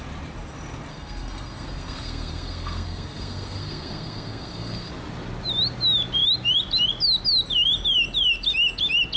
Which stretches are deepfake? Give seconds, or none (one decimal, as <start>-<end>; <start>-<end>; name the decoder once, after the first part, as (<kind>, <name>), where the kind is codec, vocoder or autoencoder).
0.9-4.9 (codec, SNAC)